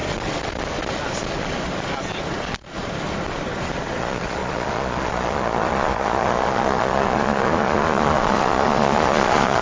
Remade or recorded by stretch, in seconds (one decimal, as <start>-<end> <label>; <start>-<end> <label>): 0.0-4.0 recorded; 4.0-9.6 remade